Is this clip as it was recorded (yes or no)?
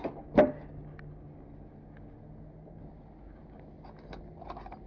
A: yes